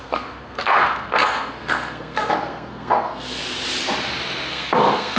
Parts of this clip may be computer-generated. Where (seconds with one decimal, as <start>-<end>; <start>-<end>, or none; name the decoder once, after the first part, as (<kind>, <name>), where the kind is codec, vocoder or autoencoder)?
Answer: 0.0-3.4 (codec, SNAC); 4.5-5.2